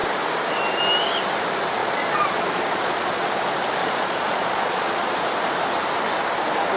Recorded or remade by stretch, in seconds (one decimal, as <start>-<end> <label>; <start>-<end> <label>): 0.0-1.8 recorded; 1.8-3.3 remade; 3.3-3.8 recorded; 3.8-5.2 remade; 5.2-6.8 recorded